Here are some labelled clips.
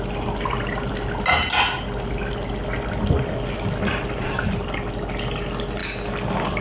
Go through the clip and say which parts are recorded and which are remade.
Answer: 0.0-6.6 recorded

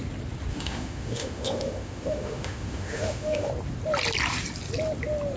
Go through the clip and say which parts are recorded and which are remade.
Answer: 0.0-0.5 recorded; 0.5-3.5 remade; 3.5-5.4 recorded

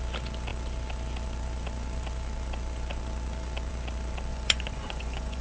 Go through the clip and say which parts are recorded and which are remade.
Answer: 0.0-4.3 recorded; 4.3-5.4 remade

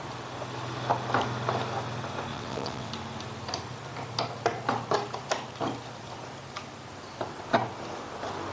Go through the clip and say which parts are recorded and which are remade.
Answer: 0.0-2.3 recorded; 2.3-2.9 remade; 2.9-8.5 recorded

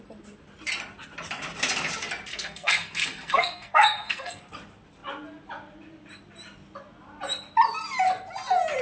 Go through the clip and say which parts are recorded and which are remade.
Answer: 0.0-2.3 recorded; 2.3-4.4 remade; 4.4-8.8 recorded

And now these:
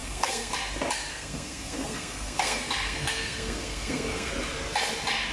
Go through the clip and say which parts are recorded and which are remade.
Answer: 0.0-0.5 remade; 0.5-1.1 recorded; 1.1-4.3 remade; 4.3-5.3 recorded